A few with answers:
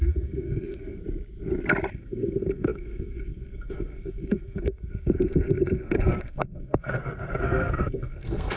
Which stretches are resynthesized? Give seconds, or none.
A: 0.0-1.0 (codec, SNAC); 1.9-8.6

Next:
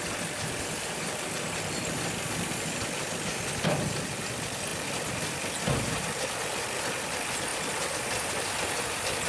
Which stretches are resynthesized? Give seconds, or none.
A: 4.7-6.8 (vocoder, BigVGAN v2)